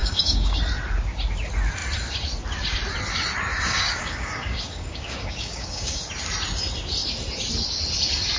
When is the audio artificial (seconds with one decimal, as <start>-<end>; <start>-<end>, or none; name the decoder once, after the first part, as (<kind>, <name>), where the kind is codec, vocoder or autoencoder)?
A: 0.0-0.6 (codec, DAC); 3.5-6.1